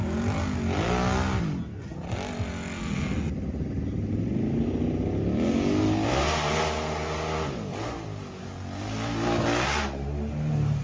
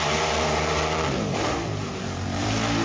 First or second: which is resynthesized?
second